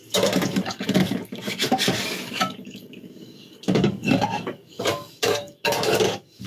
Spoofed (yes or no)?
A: yes